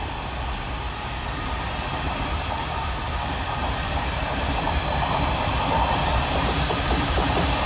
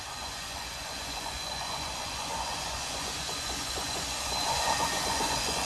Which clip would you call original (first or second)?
first